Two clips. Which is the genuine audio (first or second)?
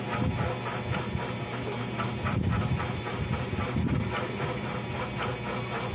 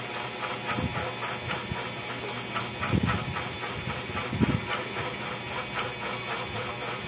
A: second